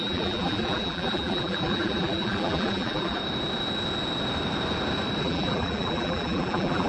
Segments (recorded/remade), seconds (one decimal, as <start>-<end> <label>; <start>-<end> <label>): 0.0-3.2 remade; 3.2-5.2 recorded; 5.2-6.9 remade